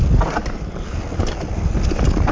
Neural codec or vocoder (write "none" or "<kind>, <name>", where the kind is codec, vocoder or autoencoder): none